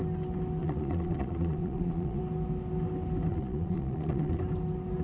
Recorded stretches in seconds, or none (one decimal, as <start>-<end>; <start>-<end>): 0.0-0.6; 2.2-3.3; 4.4-5.0